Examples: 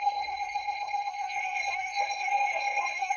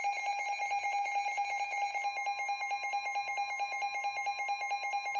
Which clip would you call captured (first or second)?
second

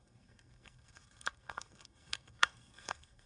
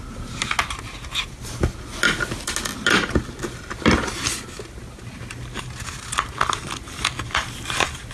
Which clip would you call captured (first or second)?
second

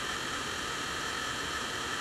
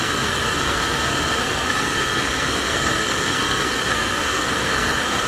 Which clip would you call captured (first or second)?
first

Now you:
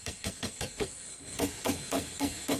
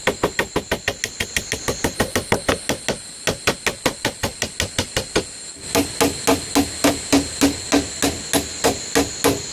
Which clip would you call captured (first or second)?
second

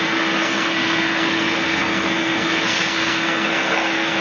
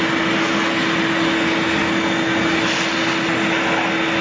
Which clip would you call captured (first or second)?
second